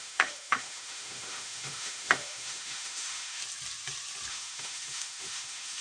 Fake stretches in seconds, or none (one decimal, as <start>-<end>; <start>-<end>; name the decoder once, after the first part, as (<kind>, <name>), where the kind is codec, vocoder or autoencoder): 0.0-3.4 (autoencoder, DAC-VAE); 4.3-5.8